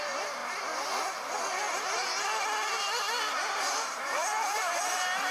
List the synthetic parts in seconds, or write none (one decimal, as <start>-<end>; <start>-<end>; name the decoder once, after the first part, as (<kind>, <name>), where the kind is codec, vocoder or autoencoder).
0.0-0.4 (vocoder, BigVGAN v2); 3.4-5.3